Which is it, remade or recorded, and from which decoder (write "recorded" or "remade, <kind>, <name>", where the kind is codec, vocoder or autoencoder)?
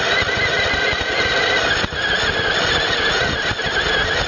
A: recorded